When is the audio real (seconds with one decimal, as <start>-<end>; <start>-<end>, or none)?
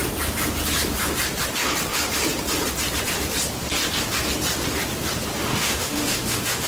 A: 0.0-5.5